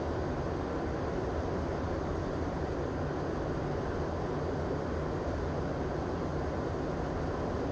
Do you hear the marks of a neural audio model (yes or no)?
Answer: no